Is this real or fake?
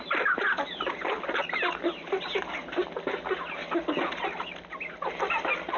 real